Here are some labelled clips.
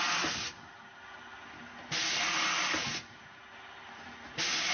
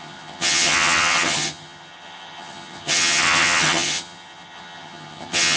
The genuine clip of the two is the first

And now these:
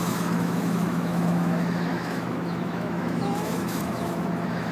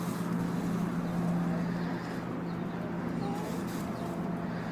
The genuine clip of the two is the second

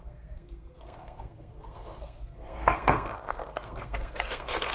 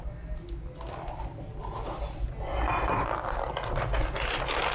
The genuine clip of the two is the second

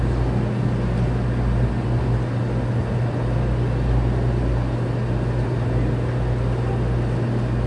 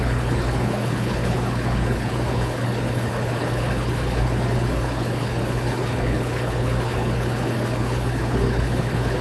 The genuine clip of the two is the first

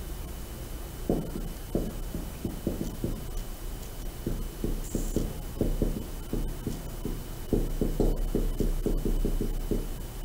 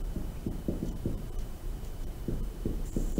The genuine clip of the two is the first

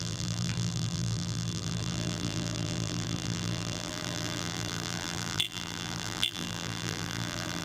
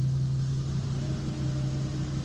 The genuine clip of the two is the second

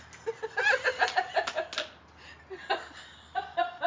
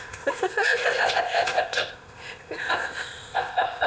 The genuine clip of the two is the first